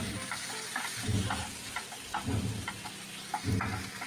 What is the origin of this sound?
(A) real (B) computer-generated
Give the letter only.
A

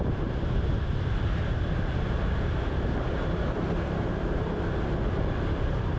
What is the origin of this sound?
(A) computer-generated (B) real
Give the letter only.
B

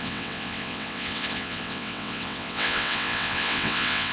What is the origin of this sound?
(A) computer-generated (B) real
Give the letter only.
A